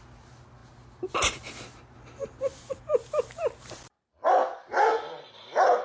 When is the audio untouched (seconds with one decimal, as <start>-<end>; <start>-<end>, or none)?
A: 0.0-2.5; 4.1-5.8